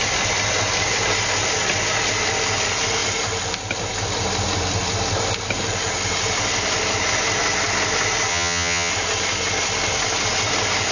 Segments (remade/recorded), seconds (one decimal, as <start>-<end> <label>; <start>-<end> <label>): 0.0-8.3 recorded; 8.3-8.9 remade; 8.9-10.9 recorded